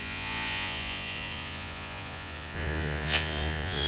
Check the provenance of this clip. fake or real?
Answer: fake